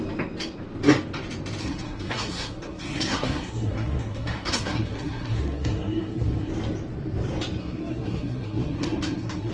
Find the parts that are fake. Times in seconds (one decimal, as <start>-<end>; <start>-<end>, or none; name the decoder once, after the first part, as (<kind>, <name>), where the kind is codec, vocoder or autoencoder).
1.6-6.5 (codec, SNAC); 7.6-9.5